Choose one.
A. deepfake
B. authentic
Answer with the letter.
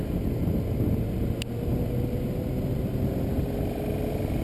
B